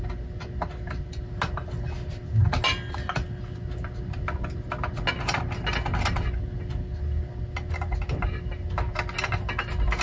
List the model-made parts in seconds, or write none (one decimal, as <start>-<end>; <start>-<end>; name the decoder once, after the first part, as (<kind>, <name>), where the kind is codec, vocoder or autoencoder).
none